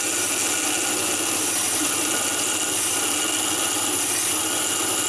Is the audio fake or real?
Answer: real